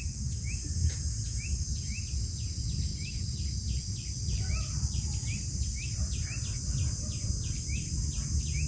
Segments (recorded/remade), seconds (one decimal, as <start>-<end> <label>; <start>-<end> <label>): 0.0-2.9 recorded; 2.9-3.9 remade; 3.9-8.7 recorded